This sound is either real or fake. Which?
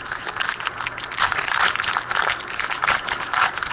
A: real